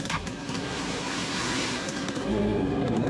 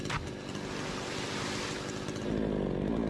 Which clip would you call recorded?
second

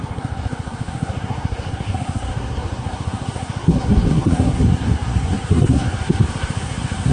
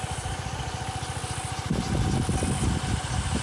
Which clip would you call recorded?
second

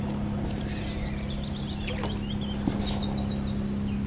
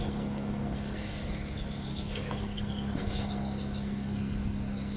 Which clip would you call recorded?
first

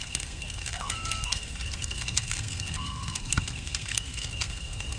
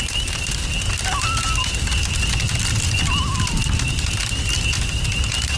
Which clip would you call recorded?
second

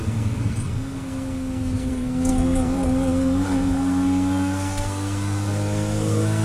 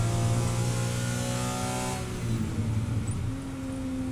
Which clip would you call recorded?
second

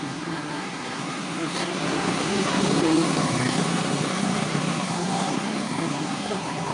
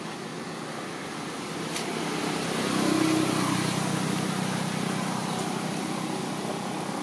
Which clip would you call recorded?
second